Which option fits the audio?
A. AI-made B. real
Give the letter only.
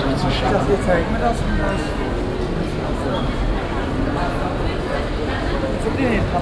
B